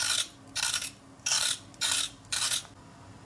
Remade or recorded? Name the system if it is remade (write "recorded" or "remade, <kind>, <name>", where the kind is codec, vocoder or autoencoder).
recorded